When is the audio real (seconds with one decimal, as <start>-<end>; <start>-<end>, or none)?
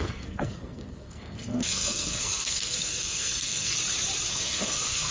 3.7-4.3